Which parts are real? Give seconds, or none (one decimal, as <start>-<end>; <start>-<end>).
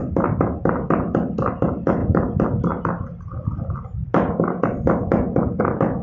0.0-6.0